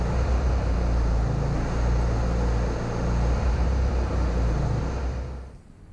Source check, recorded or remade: recorded